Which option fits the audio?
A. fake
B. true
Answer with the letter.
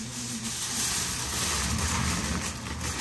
B